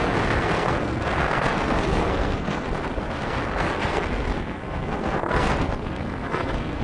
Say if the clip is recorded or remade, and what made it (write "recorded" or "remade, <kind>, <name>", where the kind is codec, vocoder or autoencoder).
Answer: remade, codec, SNAC